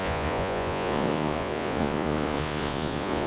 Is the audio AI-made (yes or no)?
yes